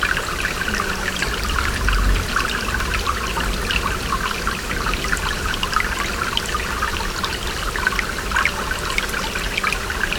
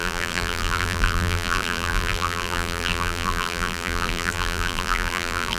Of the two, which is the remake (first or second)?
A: second